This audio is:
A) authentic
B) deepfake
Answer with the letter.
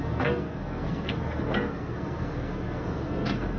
B